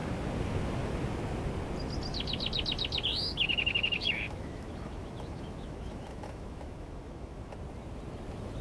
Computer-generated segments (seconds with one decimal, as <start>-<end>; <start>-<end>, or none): 3.1-7.5